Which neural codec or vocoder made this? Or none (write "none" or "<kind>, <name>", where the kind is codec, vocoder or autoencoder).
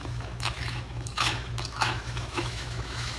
autoencoder, DAC-VAE